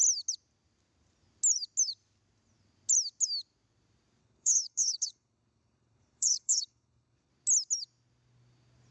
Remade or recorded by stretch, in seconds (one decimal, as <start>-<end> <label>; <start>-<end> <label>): 0.0-4.2 recorded; 4.2-7.3 remade; 7.3-8.9 recorded